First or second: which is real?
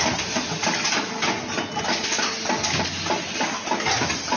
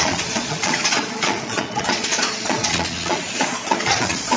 first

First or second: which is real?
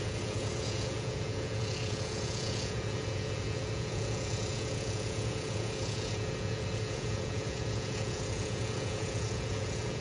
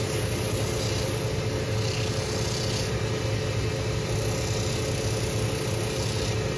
second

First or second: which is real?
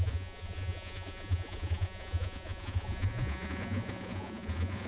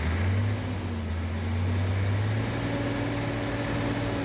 second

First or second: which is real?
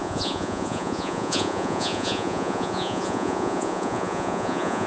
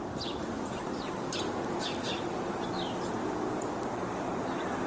second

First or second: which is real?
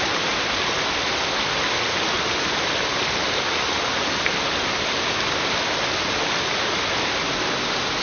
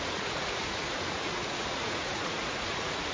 first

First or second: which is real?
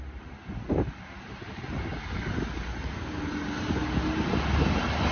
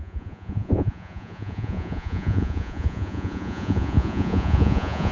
first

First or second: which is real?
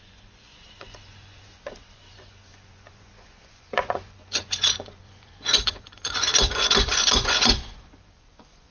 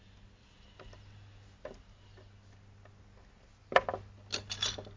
second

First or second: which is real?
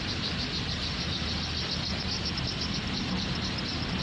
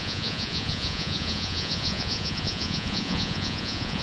first